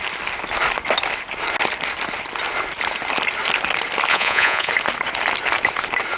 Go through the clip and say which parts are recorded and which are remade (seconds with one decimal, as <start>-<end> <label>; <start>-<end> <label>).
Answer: 0.0-4.1 recorded; 4.1-4.7 remade; 4.7-6.2 recorded